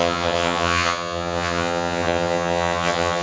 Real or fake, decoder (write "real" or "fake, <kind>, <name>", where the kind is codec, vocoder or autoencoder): fake, vocoder, HiFi-GAN